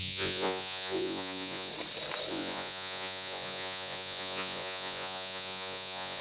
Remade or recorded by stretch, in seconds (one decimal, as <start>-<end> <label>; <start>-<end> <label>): 0.0-1.7 remade; 1.7-2.3 recorded; 2.3-6.2 remade